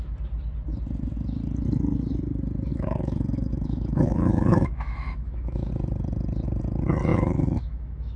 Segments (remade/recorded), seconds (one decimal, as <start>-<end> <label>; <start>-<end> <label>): 0.0-2.7 recorded; 2.7-5.7 remade; 5.7-7.1 recorded; 7.1-8.2 remade